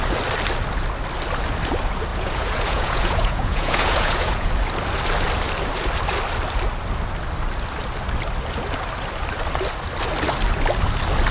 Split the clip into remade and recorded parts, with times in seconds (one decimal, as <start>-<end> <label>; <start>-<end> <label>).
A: 0.0-2.1 recorded; 2.1-4.5 remade; 4.5-11.3 recorded

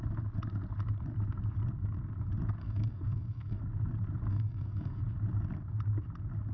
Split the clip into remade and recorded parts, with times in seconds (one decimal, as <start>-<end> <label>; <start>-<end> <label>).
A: 0.0-2.6 recorded; 2.6-3.6 remade; 3.6-4.3 recorded; 4.3-5.0 remade; 5.0-6.5 recorded

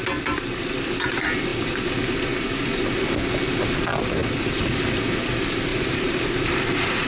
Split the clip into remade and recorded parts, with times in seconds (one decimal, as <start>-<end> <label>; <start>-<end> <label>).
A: 0.0-5.7 recorded; 5.7-7.1 remade